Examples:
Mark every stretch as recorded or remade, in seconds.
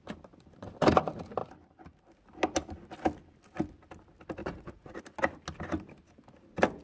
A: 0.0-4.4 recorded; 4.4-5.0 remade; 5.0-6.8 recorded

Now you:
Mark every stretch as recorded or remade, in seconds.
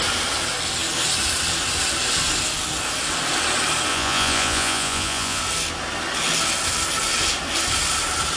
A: 0.0-3.9 recorded; 3.9-5.4 remade; 5.4-8.4 recorded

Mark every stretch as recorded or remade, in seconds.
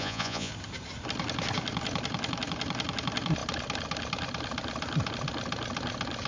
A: 0.0-0.5 remade; 0.5-6.3 recorded